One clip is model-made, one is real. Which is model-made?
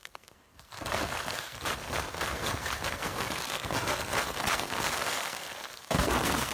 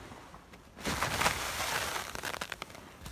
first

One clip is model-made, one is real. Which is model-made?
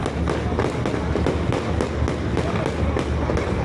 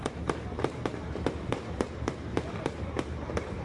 second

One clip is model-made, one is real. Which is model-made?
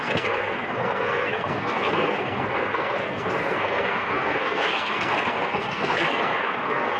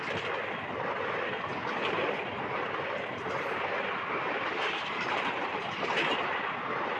first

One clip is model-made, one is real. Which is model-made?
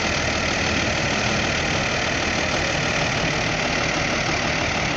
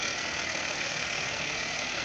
second